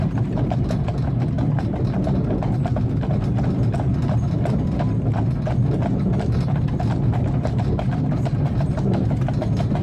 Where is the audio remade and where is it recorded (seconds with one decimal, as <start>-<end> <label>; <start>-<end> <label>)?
0.0-9.8 recorded